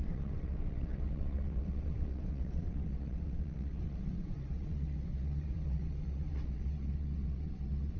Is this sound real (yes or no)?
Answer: no